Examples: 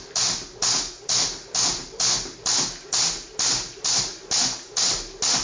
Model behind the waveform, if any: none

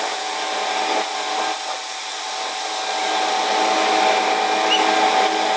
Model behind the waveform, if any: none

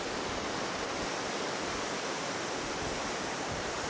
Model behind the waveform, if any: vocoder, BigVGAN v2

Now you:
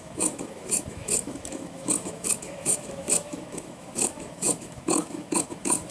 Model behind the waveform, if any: autoencoder, DAC-VAE